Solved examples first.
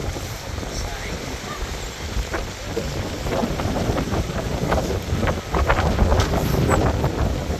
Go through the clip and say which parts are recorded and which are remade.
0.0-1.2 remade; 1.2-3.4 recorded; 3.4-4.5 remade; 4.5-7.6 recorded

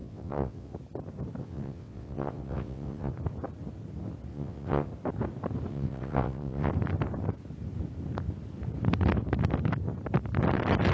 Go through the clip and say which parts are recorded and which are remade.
0.0-0.7 remade; 0.7-1.4 recorded; 1.4-3.1 remade; 3.1-4.3 recorded; 4.3-4.9 remade; 4.9-5.7 recorded; 5.7-6.7 remade; 6.7-10.9 recorded